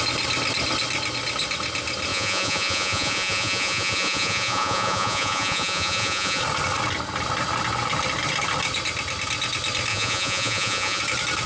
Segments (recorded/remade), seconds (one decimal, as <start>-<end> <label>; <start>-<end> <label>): 0.0-2.1 recorded; 2.1-6.4 remade; 6.4-9.9 recorded; 9.9-11.0 remade; 11.0-11.5 recorded